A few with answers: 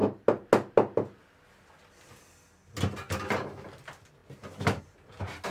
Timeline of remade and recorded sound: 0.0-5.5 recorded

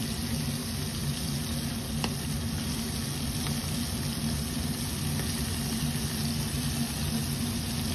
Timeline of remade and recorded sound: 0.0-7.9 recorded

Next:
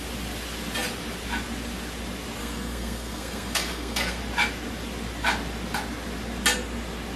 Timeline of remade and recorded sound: 0.0-2.4 recorded; 2.4-4.2 remade; 4.2-7.2 recorded